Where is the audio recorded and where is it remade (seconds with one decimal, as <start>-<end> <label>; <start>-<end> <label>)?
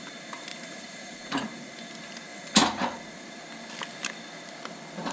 0.0-0.5 recorded; 0.5-1.7 remade; 1.7-2.3 recorded; 2.3-3.0 remade; 3.0-5.1 recorded